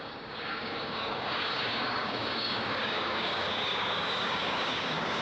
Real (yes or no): no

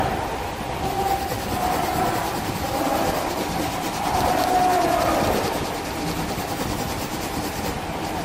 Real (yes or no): yes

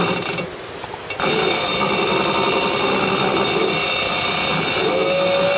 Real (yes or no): yes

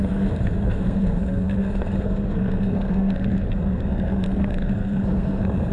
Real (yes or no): no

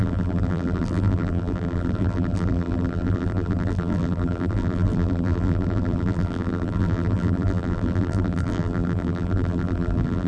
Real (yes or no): no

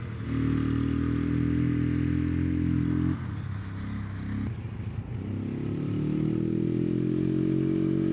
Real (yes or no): yes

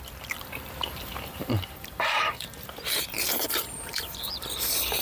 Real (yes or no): no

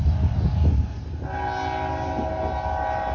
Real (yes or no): yes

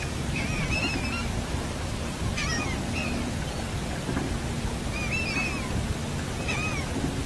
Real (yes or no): yes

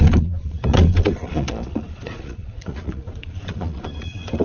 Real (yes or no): no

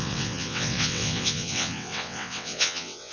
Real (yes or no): no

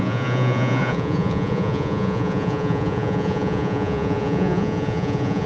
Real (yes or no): no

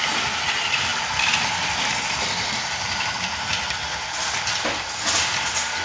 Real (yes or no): yes